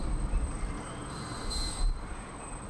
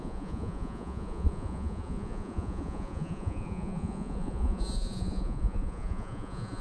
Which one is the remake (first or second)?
second